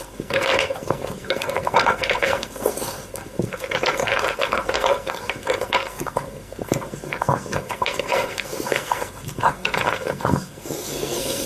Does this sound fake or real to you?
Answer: fake